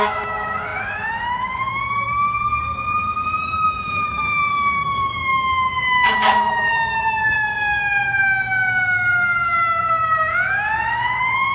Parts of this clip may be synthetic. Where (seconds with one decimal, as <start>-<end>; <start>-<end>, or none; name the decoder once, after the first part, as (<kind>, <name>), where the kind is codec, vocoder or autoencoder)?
0.0-2.5 (autoencoder, DAC-VAE); 3.4-11.5